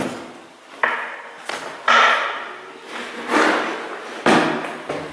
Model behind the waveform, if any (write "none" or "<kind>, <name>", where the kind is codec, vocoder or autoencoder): vocoder, BigVGAN v2